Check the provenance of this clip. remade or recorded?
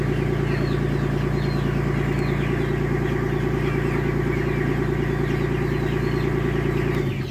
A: recorded